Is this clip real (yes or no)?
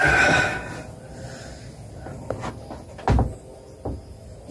yes